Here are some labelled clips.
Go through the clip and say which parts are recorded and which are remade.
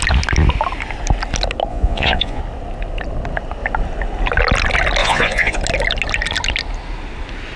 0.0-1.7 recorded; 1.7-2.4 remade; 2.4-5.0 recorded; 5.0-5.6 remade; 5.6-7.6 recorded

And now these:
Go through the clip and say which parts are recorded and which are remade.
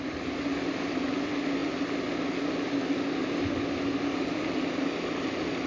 0.0-5.7 recorded